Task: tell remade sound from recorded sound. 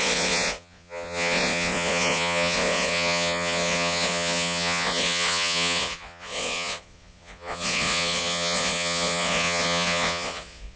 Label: remade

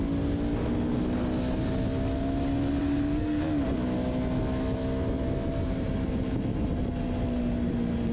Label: recorded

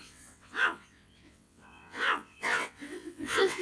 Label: remade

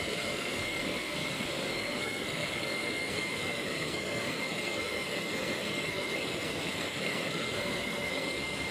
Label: remade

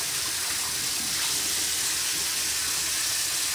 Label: recorded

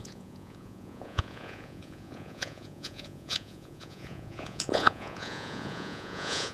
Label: remade